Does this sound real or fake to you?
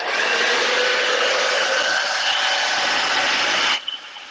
real